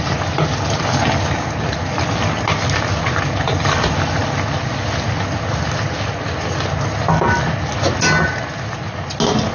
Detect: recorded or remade recorded